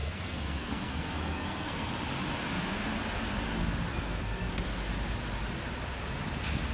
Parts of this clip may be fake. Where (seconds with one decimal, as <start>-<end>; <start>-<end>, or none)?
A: 0.0-1.9; 3.9-4.5